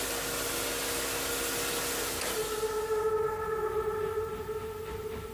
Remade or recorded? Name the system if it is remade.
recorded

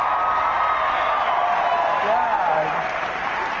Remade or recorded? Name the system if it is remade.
recorded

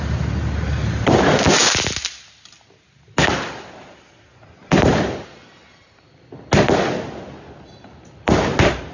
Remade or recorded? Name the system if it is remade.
recorded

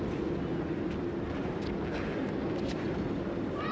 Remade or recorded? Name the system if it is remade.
recorded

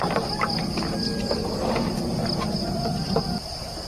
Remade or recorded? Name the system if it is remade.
recorded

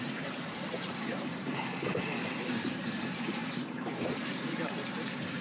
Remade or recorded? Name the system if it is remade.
remade, vocoder, BigVGAN v2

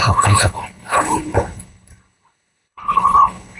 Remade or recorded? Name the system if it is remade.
remade, codec, HILCodec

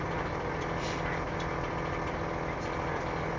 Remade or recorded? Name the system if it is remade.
recorded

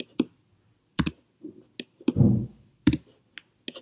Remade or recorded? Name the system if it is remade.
recorded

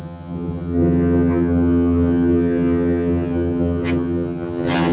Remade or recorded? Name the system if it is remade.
remade, vocoder, HiFi-GAN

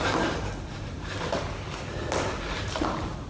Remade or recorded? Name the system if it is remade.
recorded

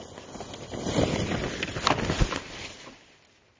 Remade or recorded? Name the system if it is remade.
recorded